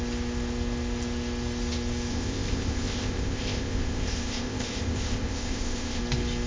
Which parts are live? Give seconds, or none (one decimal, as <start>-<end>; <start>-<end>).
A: 0.0-2.1; 6.0-6.5